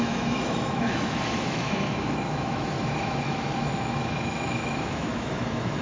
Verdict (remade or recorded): remade